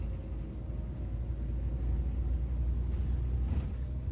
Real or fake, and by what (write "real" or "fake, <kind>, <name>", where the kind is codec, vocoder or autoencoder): real